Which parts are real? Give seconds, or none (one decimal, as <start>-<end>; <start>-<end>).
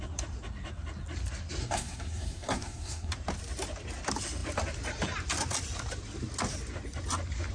0.0-1.6; 3.1-7.5